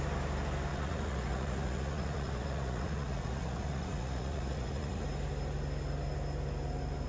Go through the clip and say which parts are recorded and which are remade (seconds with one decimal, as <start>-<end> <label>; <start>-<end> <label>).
0.0-0.7 recorded; 0.7-5.0 remade; 5.0-7.1 recorded